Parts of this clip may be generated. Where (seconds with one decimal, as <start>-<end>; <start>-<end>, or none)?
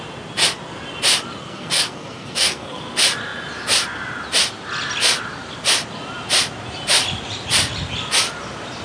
1.4-2.8